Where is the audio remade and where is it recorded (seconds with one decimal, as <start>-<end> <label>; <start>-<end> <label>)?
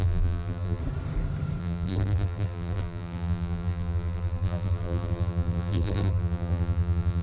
0.0-0.8 remade; 0.8-1.6 recorded; 1.6-7.2 remade